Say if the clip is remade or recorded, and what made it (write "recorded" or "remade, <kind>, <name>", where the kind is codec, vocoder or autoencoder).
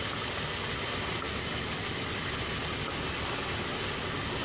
recorded